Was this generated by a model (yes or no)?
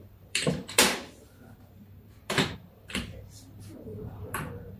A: yes